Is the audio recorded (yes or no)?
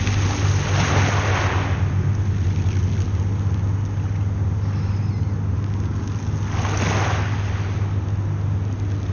yes